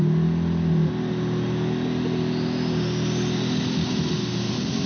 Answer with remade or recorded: recorded